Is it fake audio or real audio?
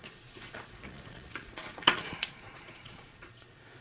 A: fake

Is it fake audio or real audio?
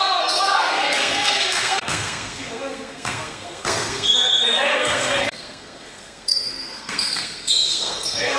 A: fake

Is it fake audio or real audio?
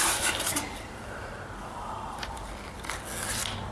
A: real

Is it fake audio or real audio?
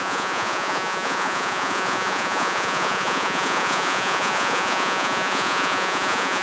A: fake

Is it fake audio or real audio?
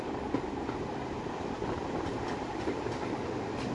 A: fake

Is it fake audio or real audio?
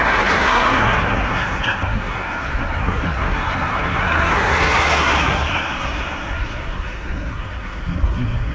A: fake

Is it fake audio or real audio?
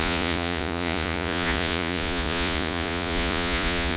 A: fake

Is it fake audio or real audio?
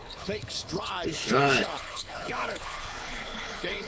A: fake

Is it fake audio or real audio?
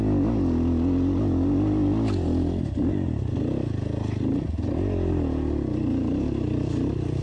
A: real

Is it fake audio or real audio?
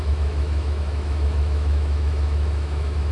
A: fake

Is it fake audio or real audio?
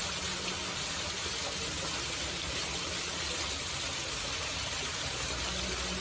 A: real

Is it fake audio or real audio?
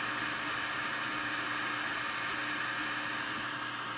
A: real